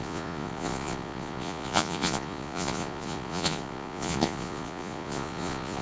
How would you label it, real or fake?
fake